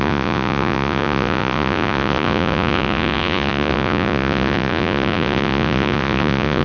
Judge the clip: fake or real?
fake